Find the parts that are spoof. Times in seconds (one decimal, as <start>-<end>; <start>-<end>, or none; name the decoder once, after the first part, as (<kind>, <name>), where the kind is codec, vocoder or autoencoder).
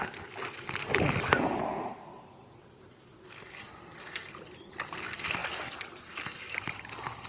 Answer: none